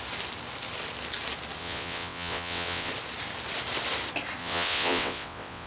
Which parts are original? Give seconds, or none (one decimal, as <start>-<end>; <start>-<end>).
0.0-1.6; 2.9-4.4